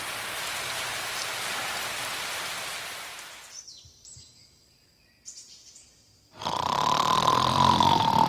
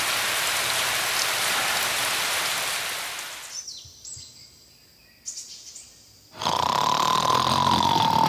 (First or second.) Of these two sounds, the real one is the second